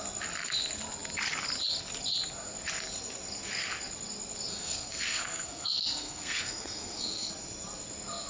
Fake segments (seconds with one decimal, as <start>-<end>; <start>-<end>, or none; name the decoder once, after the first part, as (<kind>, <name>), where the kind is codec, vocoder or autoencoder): 4.5-7.3 (codec, SNAC)